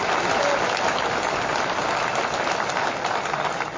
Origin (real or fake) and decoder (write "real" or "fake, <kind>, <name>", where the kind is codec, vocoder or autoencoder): real